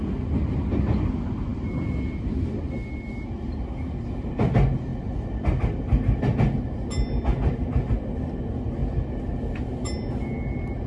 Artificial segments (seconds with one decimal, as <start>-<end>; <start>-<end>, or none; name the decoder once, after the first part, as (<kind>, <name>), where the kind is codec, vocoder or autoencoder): 4.9-5.8 (vocoder, BigVGAN v2); 7.3-7.9